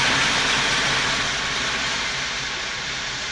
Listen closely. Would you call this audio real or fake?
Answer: real